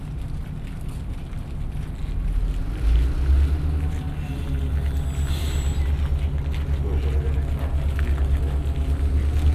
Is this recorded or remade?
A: recorded